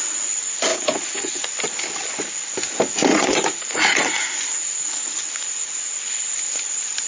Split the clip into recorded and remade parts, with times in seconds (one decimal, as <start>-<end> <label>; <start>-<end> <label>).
0.0-0.7 recorded; 0.7-1.5 remade; 1.5-3.1 recorded; 3.1-6.0 remade; 6.0-7.1 recorded